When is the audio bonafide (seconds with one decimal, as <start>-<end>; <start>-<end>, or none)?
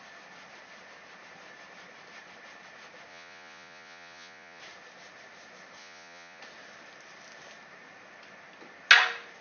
0.0-3.1; 4.6-5.8; 6.4-9.4